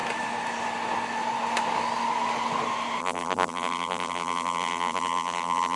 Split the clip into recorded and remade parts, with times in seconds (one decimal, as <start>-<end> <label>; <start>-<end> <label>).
0.0-3.0 recorded; 3.0-5.8 remade